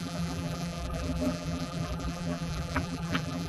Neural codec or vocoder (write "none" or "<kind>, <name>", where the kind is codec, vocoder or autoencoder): vocoder, BigVGAN v2